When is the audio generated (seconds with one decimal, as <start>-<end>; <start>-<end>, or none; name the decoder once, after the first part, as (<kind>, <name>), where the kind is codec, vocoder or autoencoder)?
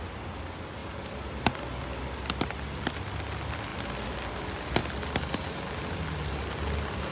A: none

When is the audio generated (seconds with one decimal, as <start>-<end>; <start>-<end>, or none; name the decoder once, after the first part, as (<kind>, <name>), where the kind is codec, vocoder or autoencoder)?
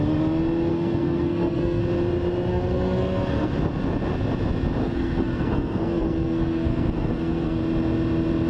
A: 0.7-1.8 (codec, SNAC); 2.5-3.5; 4.8-7.6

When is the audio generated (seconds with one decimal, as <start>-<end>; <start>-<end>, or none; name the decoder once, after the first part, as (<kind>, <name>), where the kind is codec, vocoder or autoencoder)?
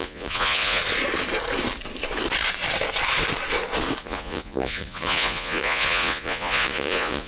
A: 0.0-0.8 (vocoder, Vocos); 4.0-7.3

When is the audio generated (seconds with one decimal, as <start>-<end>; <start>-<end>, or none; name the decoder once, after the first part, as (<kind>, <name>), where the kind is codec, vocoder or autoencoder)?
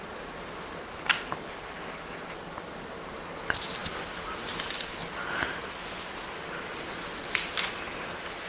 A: none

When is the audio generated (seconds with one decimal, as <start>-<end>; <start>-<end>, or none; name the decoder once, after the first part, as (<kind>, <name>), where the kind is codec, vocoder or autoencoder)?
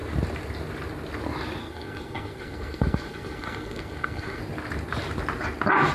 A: 1.6-4.4 (codec, SNAC)